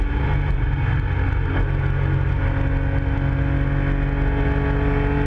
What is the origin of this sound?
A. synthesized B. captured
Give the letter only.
B